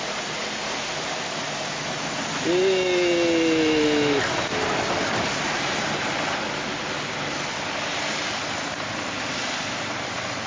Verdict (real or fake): real